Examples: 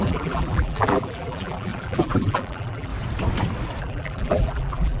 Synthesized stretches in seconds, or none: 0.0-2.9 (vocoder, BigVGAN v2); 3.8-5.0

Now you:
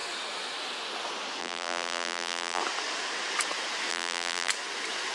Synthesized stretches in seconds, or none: 1.4-2.6 (vocoder, BigVGAN v2); 3.9-4.5

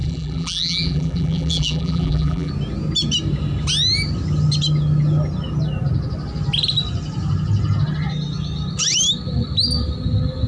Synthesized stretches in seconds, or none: 0.0-2.5 (vocoder, BigVGAN v2)

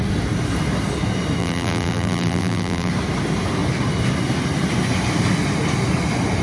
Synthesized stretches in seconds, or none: 1.4-2.9 (vocoder, BigVGAN v2)

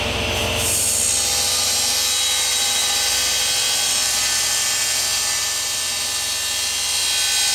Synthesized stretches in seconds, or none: none

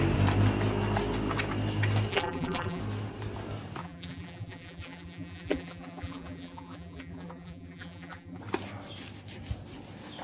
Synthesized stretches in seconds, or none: 2.1-2.8 (vocoder, BigVGAN v2); 3.8-8.4

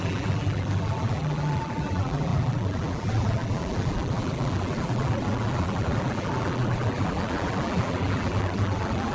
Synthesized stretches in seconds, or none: 0.0-9.1 (vocoder, BigVGAN v2)